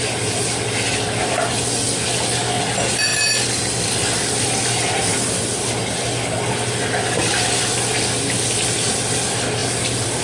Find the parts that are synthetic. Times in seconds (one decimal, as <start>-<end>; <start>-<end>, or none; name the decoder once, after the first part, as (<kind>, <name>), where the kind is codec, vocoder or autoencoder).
none